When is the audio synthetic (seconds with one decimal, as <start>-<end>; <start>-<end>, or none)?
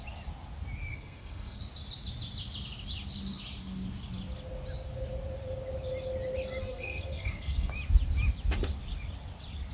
0.9-1.6; 6.6-7.7